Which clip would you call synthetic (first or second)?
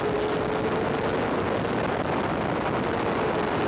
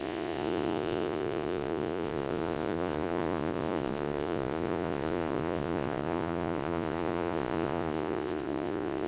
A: second